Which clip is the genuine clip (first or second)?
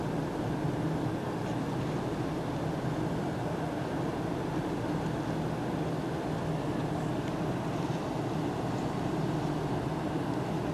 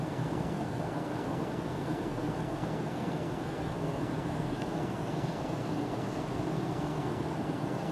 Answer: first